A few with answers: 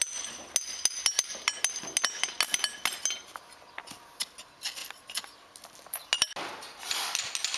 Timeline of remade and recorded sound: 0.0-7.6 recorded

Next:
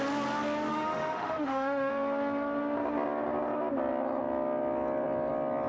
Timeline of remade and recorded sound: 0.0-0.7 recorded; 0.7-1.9 remade; 1.9-5.7 recorded

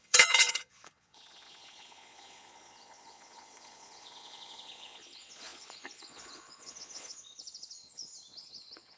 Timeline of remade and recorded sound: 0.0-9.0 remade

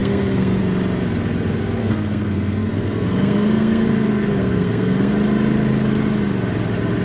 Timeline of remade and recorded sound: 0.0-0.6 remade; 0.6-1.8 recorded; 1.8-5.1 remade; 5.1-7.0 recorded

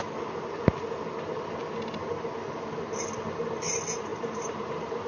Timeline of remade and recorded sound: 0.0-4.1 recorded; 4.1-5.1 remade